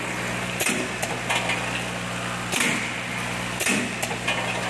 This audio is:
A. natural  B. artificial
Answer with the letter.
A